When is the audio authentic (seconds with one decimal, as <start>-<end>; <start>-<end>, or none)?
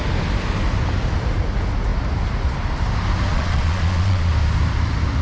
0.0-3.3; 4.3-5.2